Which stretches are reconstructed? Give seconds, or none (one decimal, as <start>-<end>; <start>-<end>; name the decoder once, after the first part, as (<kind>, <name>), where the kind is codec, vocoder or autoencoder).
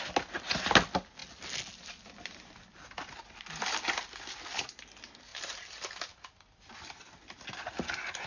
none